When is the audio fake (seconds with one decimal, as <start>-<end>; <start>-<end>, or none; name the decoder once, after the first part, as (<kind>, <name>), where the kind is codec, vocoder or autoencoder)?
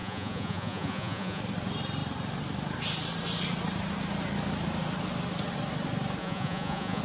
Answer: 0.0-1.4 (vocoder, Vocos); 6.2-7.0